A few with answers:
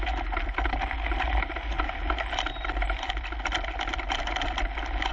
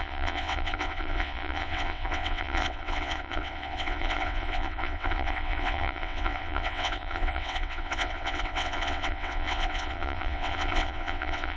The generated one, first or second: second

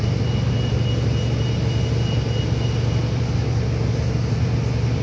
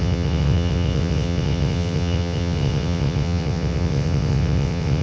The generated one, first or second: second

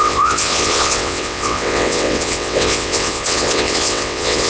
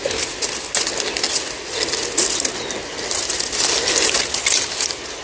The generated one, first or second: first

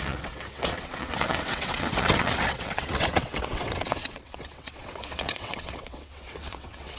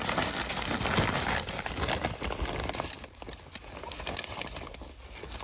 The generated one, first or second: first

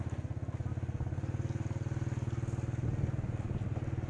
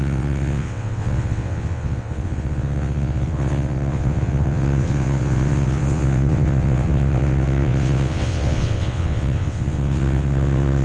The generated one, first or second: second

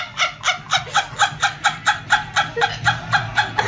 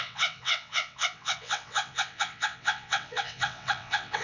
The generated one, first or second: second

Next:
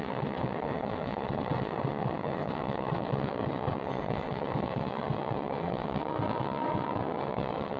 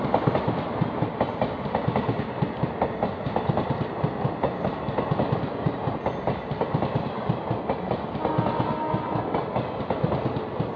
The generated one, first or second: first